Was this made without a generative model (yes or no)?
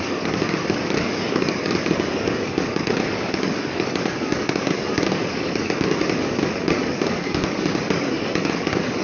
no